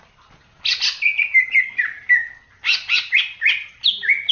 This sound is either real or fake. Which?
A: real